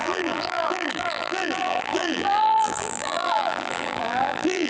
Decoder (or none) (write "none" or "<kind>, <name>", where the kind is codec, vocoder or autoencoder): vocoder, BigVGAN v2